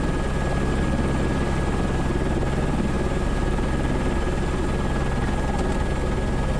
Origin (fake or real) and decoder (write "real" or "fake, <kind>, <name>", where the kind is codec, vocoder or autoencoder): real